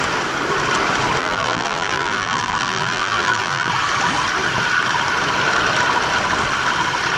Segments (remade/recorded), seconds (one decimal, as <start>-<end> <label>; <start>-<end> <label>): 0.0-1.2 recorded; 1.2-3.7 remade; 3.7-7.2 recorded